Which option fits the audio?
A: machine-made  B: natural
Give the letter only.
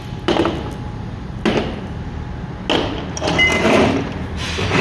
B